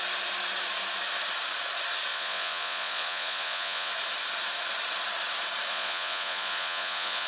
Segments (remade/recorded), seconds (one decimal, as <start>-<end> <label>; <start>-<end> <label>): 0.0-2.1 recorded; 2.1-3.9 remade; 3.9-5.7 recorded; 5.7-7.3 remade